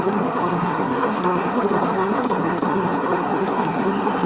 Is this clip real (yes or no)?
no